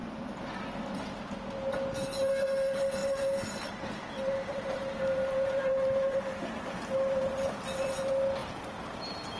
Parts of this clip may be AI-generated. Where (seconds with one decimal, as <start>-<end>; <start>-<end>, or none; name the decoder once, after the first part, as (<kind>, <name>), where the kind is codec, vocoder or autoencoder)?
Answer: 3.0-7.7 (vocoder, BigVGAN v2); 8.4-9.4